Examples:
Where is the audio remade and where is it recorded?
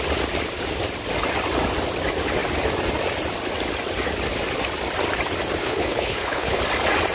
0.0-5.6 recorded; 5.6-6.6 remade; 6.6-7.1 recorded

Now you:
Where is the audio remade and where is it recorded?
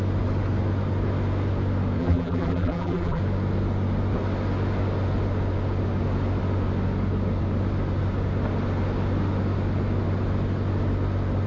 0.0-2.0 recorded; 2.0-3.2 remade; 3.2-11.5 recorded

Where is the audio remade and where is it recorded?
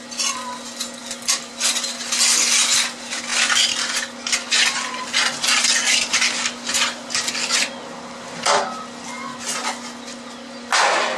0.0-11.2 recorded